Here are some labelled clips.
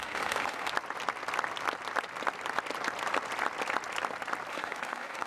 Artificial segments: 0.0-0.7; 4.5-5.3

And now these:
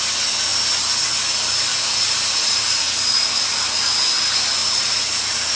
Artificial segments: 1.7-3.9; 4.6-5.5

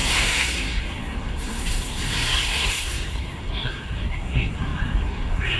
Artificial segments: 0.0-5.6

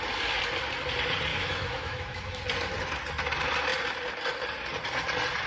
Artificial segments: 1.3-2.4

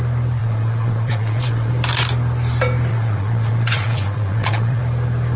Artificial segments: 0.4-1.7; 2.9-4.8